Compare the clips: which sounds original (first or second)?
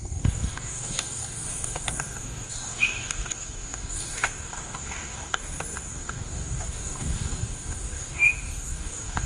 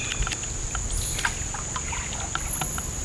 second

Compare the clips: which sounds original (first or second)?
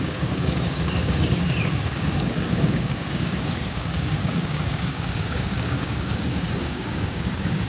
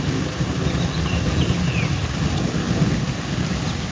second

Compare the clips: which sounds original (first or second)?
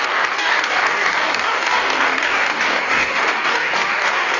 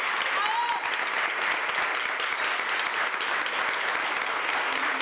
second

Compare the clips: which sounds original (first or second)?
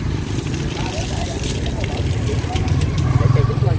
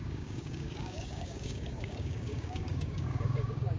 first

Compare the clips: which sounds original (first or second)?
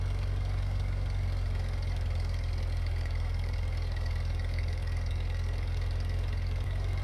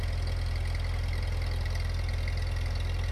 second